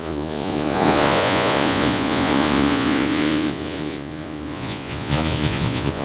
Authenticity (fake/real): fake